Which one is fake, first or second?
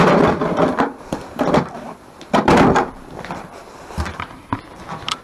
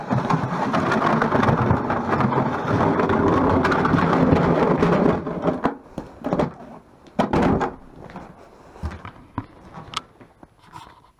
first